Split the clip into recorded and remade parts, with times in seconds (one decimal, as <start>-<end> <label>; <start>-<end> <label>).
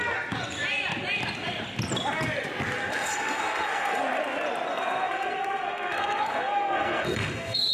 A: 0.0-2.9 recorded; 2.9-4.0 remade; 4.0-4.7 recorded; 4.7-7.7 remade